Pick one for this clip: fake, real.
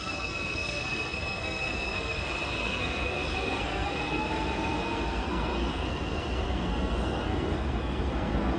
fake